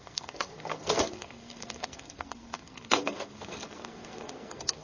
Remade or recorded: remade